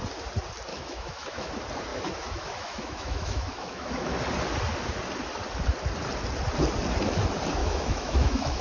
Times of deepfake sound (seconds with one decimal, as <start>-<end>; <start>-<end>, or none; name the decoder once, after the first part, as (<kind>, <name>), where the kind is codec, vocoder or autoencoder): 0.7-1.5 (autoencoder, DAC-VAE); 1.9-4.1; 7.6-8.6